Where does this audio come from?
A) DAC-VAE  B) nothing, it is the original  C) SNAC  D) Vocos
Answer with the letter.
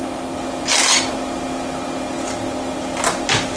B